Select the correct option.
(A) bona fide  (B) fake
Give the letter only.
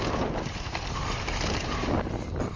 A